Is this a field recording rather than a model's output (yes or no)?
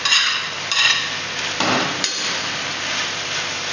yes